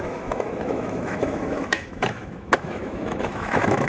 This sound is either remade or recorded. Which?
remade